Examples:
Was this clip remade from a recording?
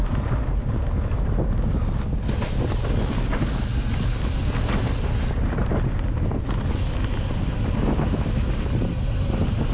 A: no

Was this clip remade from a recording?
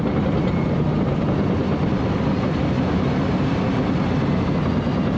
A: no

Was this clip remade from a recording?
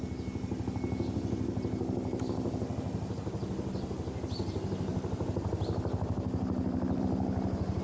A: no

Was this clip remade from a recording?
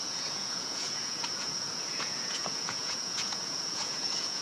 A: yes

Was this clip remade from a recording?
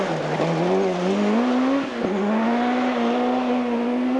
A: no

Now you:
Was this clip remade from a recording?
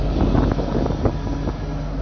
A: no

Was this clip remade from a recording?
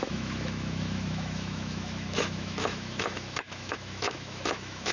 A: yes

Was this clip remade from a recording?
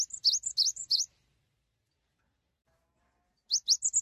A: no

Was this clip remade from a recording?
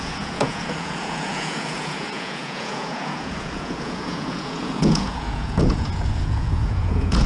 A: yes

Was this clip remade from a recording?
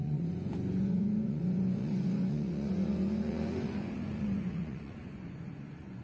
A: yes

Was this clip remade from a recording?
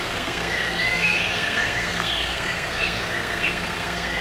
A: yes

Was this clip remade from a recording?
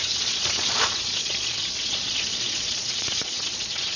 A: yes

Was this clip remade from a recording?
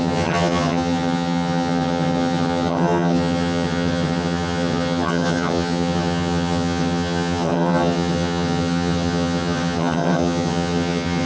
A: yes